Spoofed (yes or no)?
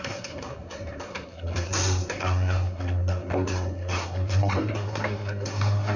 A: yes